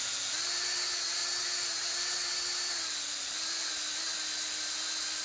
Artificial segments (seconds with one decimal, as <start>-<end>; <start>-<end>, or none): none